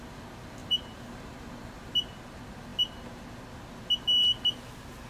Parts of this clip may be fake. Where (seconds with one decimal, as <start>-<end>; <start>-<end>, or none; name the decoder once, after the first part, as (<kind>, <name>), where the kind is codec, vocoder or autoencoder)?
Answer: 0.6-1.9 (vocoder, BigVGAN v2)